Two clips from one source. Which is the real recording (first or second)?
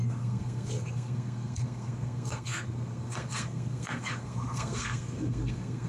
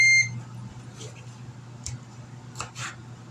second